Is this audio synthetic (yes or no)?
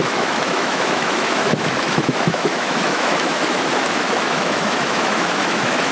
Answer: yes